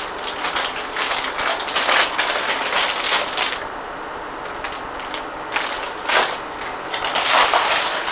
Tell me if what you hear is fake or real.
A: real